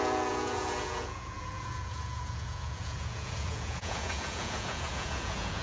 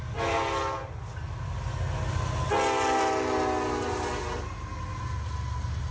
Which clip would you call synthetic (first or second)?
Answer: first